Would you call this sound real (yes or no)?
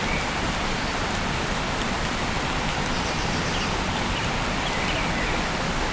yes